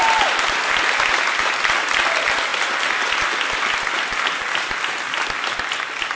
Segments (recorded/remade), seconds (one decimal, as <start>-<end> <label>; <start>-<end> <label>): 0.0-6.2 recorded